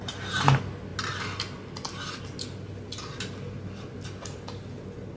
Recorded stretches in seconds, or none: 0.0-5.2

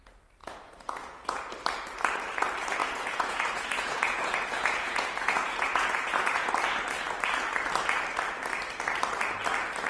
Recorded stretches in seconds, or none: 0.0-0.4; 1.4-2.8; 6.5-9.9